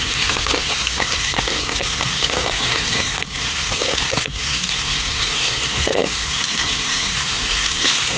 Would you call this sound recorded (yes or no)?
no